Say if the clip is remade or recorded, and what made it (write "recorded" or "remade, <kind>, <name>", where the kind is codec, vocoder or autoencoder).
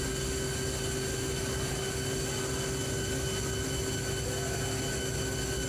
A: recorded